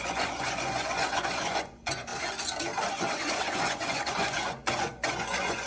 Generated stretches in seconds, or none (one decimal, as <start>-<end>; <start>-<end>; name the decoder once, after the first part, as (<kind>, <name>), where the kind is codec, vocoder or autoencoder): 0.0-2.1 (vocoder, Vocos); 2.9-5.7